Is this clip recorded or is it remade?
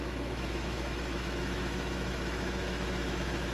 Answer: remade